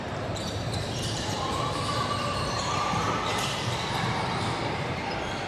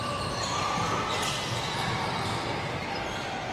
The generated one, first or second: first